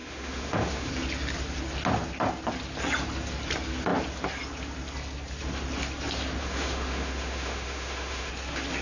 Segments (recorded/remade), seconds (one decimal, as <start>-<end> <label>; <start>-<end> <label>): 0.0-0.9 remade; 0.9-6.4 recorded; 6.4-8.3 remade; 8.3-8.8 recorded